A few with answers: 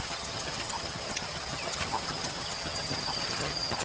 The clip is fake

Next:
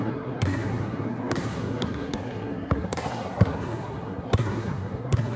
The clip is fake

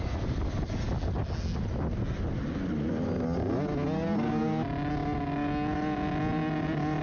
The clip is real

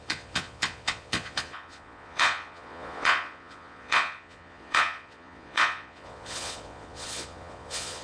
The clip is fake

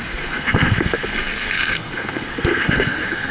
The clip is fake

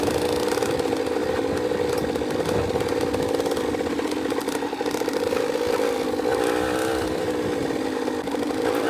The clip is real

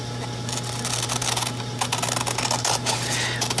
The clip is real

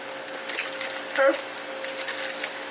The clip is real